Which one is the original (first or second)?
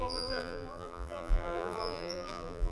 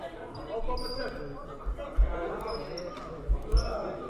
second